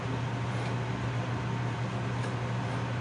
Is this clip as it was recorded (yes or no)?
yes